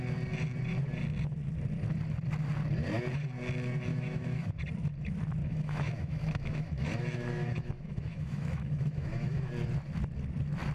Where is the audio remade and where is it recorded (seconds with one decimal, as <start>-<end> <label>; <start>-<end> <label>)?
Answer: 0.0-3.9 recorded; 3.9-4.5 remade; 4.5-5.4 recorded; 5.4-9.5 remade; 9.5-10.7 recorded